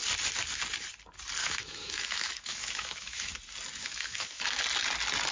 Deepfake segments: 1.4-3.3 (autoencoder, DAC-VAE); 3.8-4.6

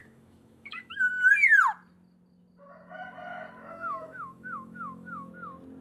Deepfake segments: 0.0-1.1 (autoencoder, DAC-VAE); 3.7-5.3

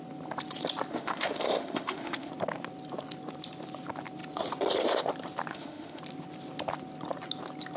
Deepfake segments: 0.9-2.3 (autoencoder, DAC-VAE); 5.5-6.0

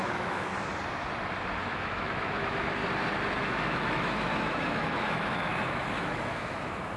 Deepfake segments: 0.0-0.5 (autoencoder, DAC-VAE); 1.6-2.8; 3.3-7.0